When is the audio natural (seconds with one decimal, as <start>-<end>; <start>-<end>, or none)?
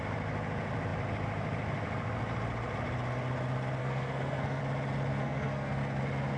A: 0.0-3.8; 4.6-5.1; 6.0-6.4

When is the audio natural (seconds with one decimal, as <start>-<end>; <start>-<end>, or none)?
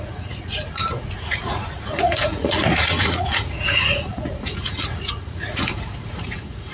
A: none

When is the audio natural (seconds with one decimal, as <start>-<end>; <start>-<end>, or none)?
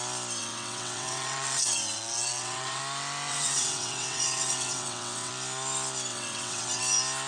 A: 0.0-0.4; 2.8-3.3; 5.3-6.1; 6.8-7.3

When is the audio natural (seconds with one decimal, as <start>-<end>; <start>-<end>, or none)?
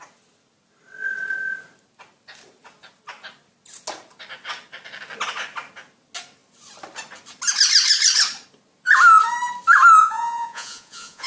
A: 0.0-10.0